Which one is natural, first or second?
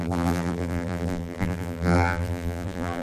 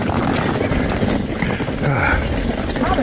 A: second